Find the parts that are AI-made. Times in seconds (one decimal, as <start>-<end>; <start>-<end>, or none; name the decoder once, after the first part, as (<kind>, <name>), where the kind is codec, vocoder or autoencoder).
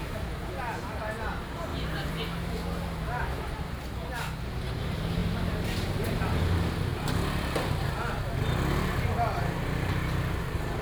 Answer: 1.7-2.2 (vocoder, BigVGAN v2)